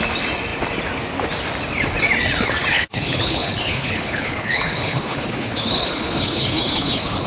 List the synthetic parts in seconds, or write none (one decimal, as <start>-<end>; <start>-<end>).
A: 2.7-7.3